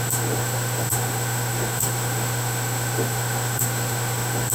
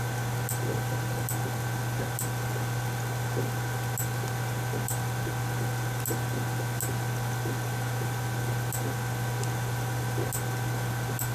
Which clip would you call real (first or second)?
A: second